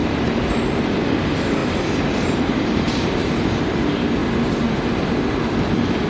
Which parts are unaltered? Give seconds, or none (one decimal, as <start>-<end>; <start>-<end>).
0.7-1.6; 3.6-6.1